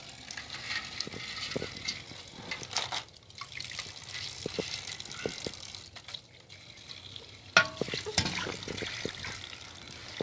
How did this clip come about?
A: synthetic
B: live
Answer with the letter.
B